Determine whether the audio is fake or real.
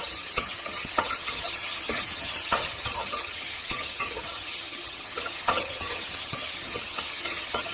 fake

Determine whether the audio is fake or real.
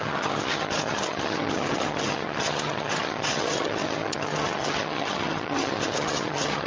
fake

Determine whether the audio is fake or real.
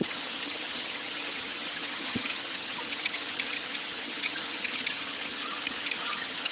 fake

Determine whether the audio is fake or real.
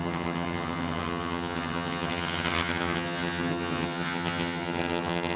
fake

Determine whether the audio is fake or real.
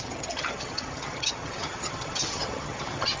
fake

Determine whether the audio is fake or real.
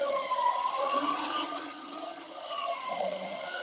fake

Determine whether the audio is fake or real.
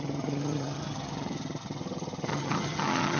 fake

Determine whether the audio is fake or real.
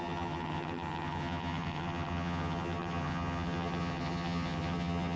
fake